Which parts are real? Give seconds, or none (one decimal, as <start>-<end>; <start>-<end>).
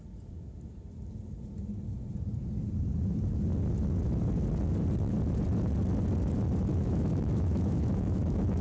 0.0-6.7